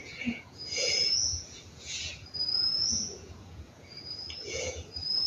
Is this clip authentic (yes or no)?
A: no